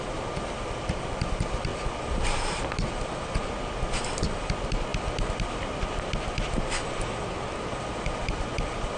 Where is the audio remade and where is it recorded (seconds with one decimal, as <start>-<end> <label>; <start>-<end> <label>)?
0.0-9.0 recorded